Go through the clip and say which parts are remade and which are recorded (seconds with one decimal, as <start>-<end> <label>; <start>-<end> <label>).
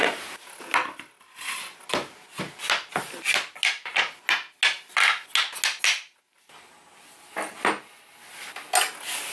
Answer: 0.0-9.3 recorded